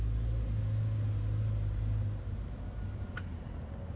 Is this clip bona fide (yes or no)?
yes